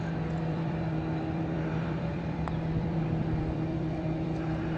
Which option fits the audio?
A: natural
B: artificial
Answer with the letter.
B